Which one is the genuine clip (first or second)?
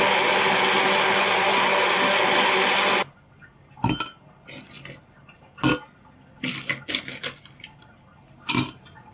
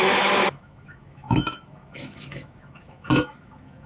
first